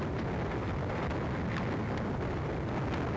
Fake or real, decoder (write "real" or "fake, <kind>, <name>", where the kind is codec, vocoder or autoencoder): real